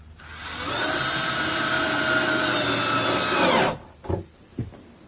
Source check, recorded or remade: recorded